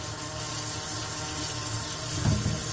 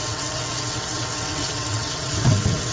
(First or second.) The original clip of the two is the first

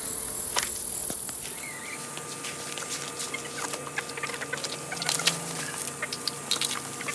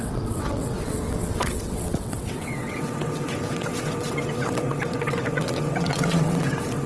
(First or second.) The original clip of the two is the first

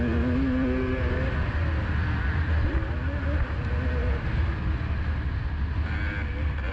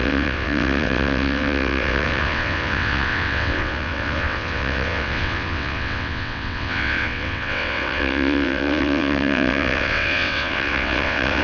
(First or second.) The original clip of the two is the first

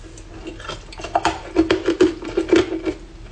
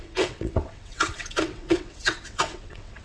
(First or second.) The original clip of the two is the first